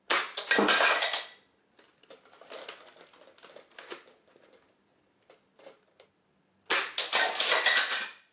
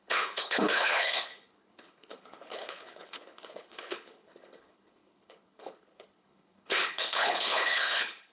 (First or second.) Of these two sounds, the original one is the first